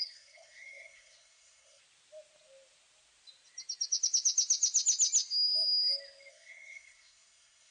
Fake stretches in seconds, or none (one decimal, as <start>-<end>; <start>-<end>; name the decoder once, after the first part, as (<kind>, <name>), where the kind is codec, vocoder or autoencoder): 0.0-1.8 (codec, SNAC); 6.3-7.7